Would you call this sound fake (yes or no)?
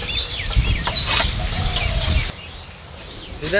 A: no